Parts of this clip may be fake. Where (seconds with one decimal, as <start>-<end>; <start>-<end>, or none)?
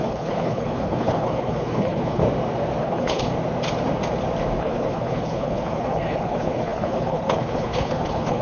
0.0-2.2; 2.8-3.3; 4.6-8.4